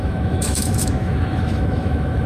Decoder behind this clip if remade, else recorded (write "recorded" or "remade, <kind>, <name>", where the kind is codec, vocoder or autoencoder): remade, autoencoder, DAC-VAE